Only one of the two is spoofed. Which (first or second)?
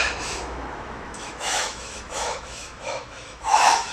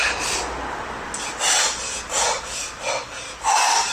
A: first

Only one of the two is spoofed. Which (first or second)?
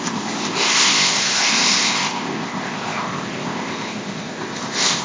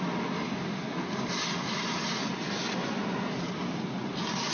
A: first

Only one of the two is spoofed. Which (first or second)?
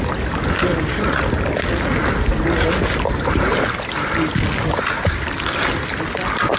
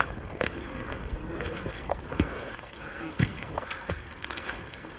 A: second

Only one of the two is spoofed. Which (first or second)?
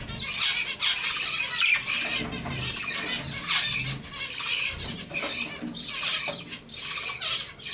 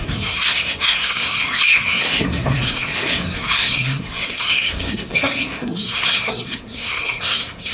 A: second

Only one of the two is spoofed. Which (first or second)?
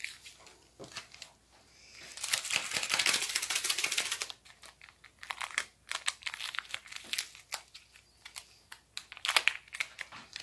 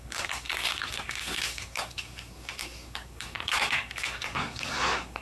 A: second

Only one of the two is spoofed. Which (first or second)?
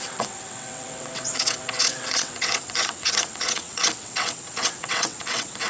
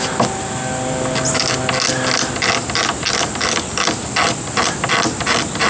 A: first